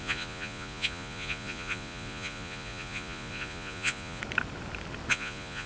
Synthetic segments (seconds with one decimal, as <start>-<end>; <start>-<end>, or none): 0.0-4.2; 5.1-5.7